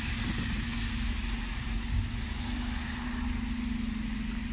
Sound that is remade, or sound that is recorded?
recorded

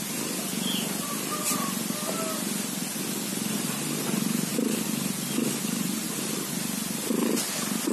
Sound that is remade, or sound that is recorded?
recorded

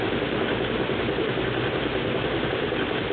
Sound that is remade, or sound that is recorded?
recorded